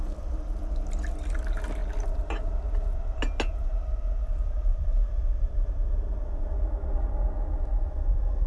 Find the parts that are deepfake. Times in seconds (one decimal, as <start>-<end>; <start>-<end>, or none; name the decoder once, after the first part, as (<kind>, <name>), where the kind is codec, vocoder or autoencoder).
4.7-5.7 (vocoder, BigVGAN v2)